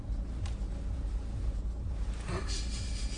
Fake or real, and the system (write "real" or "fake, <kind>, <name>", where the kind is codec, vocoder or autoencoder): real